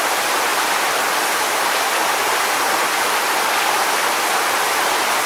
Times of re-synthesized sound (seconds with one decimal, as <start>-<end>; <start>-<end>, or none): none